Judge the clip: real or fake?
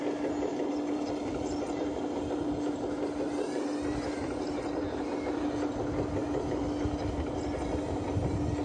real